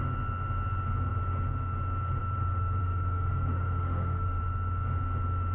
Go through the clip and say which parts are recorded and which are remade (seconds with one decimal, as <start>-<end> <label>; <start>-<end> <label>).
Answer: 0.0-2.8 recorded; 2.8-4.4 remade; 4.4-5.5 recorded